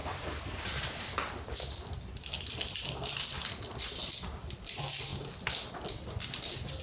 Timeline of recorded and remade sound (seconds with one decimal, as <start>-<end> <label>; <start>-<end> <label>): 0.0-6.8 recorded